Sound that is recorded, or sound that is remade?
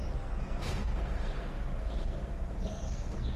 remade